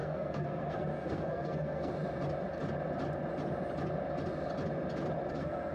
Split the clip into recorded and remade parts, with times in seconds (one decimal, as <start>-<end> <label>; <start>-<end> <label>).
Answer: 0.0-1.9 remade; 1.9-5.3 recorded; 5.3-5.7 remade